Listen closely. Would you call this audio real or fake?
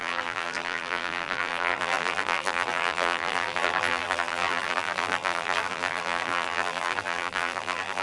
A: fake